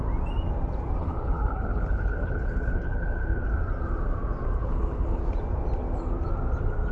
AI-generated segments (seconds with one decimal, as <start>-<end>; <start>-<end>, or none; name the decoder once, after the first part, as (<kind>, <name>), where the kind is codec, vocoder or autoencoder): 1.0-3.5 (codec, HILCodec); 4.6-5.2